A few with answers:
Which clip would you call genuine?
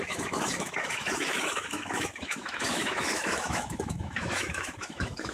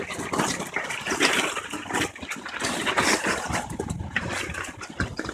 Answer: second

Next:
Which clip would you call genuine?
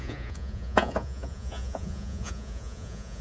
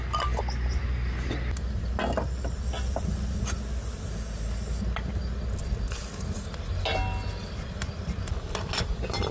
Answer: second